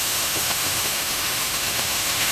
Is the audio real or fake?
fake